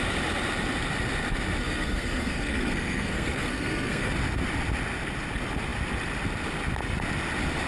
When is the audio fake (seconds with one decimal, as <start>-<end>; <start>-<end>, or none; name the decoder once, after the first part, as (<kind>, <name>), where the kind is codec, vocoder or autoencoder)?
1.6-4.1 (codec, SNAC)